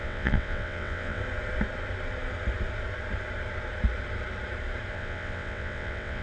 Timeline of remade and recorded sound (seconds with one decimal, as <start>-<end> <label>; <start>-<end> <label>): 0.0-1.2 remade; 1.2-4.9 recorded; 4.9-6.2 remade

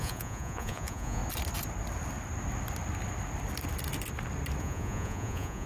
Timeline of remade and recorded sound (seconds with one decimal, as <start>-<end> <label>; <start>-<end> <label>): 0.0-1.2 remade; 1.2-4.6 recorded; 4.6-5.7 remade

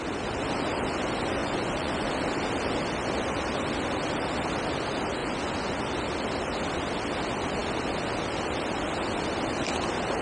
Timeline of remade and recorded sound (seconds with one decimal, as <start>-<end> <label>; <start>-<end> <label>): 0.0-1.4 recorded; 1.4-2.1 remade; 2.1-5.2 recorded; 5.2-5.8 remade; 5.8-10.2 recorded

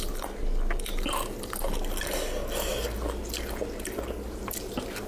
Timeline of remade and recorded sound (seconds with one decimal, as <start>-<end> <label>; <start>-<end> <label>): 0.0-5.1 recorded

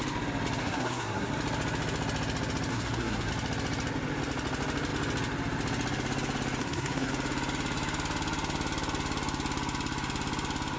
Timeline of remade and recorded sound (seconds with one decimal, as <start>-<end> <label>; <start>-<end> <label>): 0.0-0.6 recorded; 0.6-1.3 remade; 1.3-2.7 recorded; 2.7-3.3 remade; 3.3-6.6 recorded; 6.6-7.1 remade; 7.1-10.8 recorded

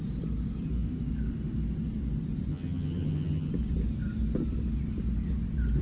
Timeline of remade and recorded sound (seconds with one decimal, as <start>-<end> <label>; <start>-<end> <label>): 0.0-2.5 recorded; 2.5-3.5 remade; 3.5-5.8 recorded

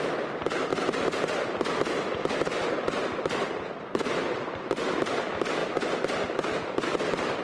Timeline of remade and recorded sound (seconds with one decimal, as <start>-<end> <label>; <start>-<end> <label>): 0.0-5.6 recorded; 5.6-7.0 remade; 7.0-7.4 recorded